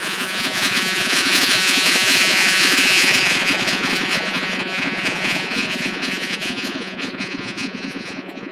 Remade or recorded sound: remade